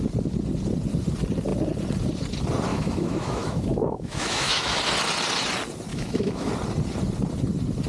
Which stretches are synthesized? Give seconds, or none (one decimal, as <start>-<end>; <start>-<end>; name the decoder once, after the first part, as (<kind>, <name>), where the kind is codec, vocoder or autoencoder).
2.7-4.8 (autoencoder, DAC-VAE); 5.9-6.5

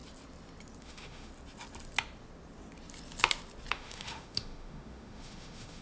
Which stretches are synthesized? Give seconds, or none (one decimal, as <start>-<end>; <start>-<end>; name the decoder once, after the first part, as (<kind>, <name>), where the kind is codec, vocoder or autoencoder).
0.8-1.3 (autoencoder, DAC-VAE); 3.7-5.8

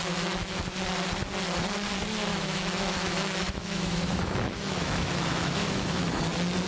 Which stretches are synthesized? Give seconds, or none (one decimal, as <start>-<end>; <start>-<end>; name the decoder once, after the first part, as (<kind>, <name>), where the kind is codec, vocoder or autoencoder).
0.0-0.6 (autoencoder, DAC-VAE); 2.3-6.2

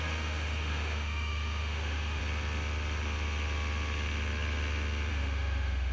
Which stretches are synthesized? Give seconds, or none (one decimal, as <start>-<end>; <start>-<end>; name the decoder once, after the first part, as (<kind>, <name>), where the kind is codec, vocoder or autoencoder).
0.0-2.2 (autoencoder, DAC-VAE); 5.1-5.9

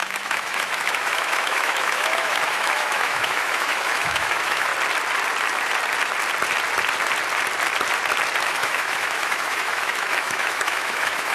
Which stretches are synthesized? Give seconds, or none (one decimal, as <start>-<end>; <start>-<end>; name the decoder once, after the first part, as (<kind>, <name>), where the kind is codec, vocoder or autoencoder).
0.0-4.7 (autoencoder, DAC-VAE); 8.4-11.3

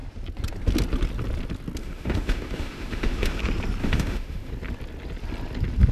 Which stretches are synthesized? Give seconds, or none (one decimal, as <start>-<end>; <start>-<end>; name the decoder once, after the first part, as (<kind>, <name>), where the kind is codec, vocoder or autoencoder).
1.8-3.4 (autoencoder, DAC-VAE); 3.8-4.5